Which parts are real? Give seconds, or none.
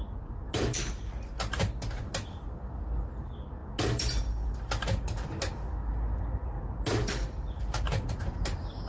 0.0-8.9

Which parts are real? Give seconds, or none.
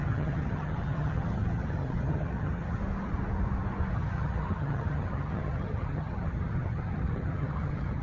2.8-3.9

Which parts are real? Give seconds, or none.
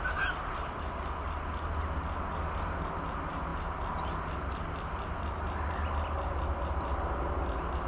0.0-7.9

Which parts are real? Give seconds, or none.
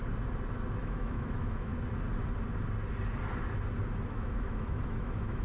0.0-0.8; 1.7-4.1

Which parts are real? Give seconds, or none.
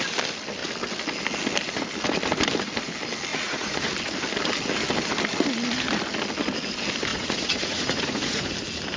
0.0-3.3; 3.9-7.1; 8.5-9.0